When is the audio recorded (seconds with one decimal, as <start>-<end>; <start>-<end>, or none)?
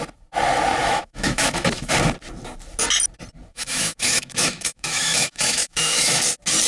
0.0-0.8; 1.9-3.5; 6.2-6.7